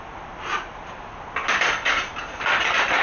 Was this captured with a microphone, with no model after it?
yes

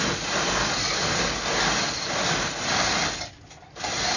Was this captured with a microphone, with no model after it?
yes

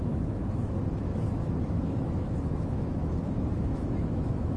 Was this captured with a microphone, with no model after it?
no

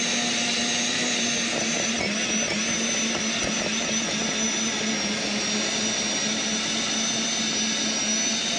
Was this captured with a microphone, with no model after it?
yes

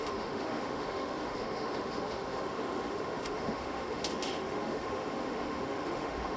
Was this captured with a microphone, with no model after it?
no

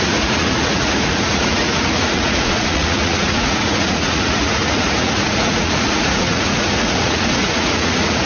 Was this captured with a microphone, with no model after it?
no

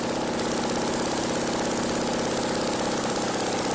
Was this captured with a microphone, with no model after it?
yes